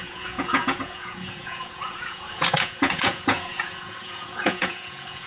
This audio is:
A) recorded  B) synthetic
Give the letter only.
B